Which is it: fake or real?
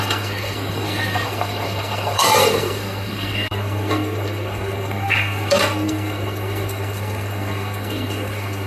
fake